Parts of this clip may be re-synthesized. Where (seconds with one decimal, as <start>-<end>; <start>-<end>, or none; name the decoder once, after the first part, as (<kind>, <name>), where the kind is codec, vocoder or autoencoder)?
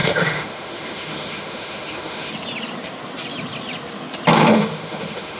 0.0-2.3 (autoencoder, DAC-VAE); 4.4-5.4